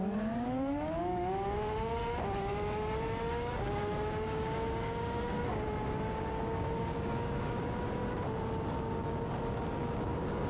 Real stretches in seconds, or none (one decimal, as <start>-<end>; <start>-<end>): 2.0-3.3; 8.0-8.7